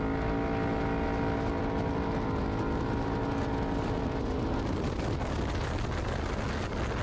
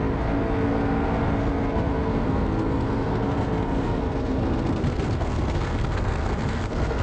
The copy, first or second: second